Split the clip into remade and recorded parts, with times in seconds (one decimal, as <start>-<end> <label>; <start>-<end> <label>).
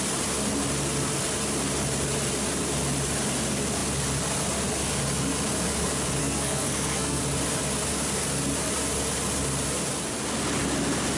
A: 0.0-6.2 recorded; 6.2-7.2 remade; 7.2-11.2 recorded